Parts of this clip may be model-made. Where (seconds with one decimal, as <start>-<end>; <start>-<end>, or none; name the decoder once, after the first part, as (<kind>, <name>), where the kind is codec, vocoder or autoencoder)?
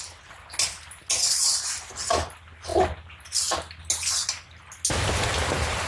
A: none